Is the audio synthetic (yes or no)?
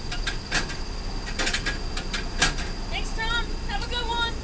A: no